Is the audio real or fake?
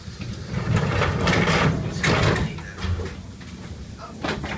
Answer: real